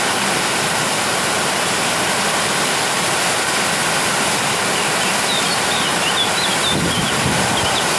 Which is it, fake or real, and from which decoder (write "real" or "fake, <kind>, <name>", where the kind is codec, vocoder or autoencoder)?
real